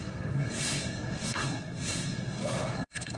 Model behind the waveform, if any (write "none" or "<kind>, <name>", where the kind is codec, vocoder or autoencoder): codec, SNAC